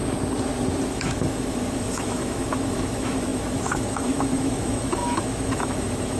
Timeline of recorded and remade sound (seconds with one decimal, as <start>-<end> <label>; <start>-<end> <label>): 0.0-0.9 recorded; 0.9-6.2 remade